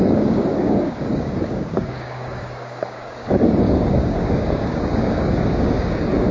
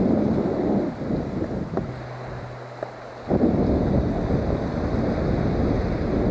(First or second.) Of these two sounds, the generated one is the first